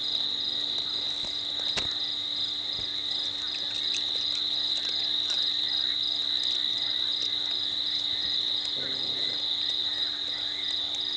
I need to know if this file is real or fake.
real